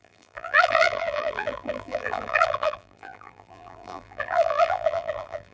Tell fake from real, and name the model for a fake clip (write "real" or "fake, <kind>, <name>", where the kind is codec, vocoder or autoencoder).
fake, vocoder, BigVGAN v2